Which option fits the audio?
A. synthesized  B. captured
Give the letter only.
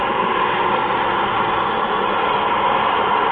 B